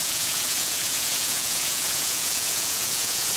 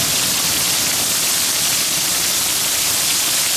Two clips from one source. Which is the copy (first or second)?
first